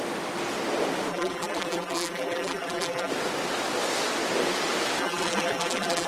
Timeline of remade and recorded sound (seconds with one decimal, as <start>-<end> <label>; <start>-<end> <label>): 0.0-1.1 recorded; 1.1-3.1 remade; 3.1-5.0 recorded; 5.0-6.1 remade

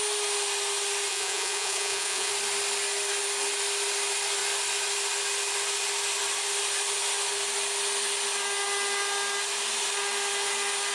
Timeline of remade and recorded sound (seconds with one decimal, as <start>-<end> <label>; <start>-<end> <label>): 0.0-1.1 recorded; 1.1-2.3 remade; 2.3-10.9 recorded